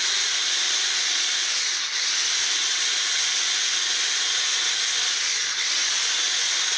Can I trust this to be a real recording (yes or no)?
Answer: yes